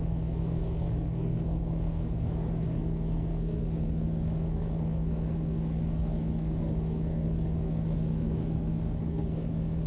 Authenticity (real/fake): fake